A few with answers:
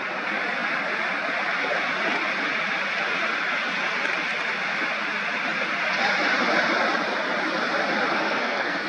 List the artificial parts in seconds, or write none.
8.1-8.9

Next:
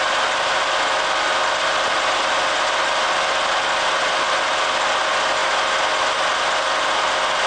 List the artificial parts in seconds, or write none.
none

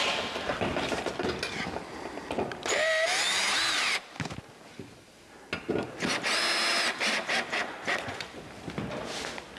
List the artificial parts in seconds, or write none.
7.6-8.5

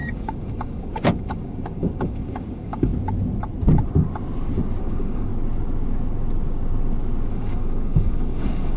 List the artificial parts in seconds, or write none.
0.0-2.9; 4.8-5.3; 7.3-8.8

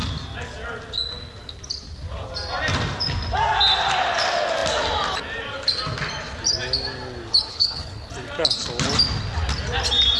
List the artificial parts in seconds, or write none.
7.5-8.1

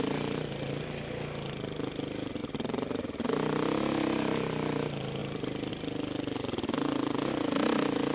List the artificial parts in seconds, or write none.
2.4-3.0

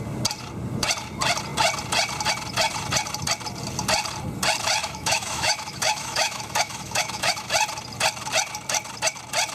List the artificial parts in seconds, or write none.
4.8-7.5